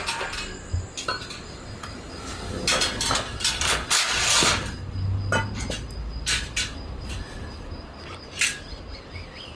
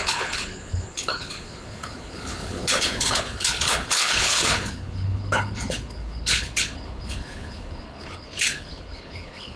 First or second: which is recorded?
first